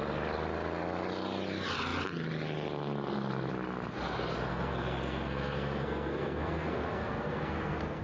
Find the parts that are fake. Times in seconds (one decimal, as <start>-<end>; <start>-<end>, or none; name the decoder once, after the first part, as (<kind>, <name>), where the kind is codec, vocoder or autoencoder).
4.5-8.0 (codec, SNAC)